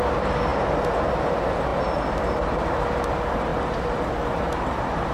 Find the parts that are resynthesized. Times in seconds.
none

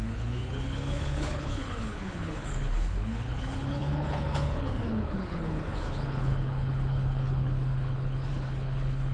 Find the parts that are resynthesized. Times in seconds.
0.0-9.1 (codec, HILCodec)

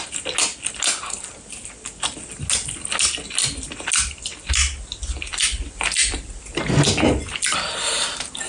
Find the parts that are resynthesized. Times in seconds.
none

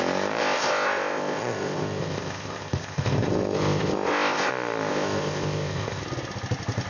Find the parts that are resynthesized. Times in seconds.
0.4-4.5 (codec, ZipCodec); 4.9-6.0

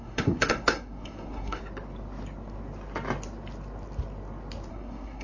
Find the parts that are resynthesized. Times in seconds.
0.0-1.6 (codec, SNAC); 4.7-5.2

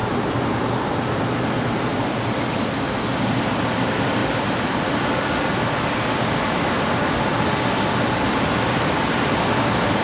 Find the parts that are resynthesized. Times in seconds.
0.0-0.7 (vocoder, BigVGAN v2); 4.2-4.9

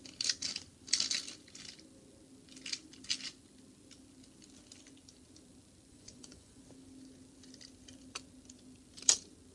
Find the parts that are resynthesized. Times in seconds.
5.9-6.6 (vocoder, Vocos)